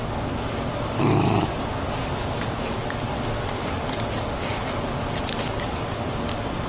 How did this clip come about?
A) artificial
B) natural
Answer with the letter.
B